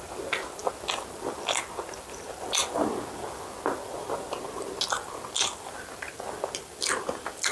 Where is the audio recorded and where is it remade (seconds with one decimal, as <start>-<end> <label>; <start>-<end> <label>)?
0.0-7.5 recorded